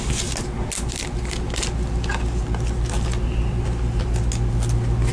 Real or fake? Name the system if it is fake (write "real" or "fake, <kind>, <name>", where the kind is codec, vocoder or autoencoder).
real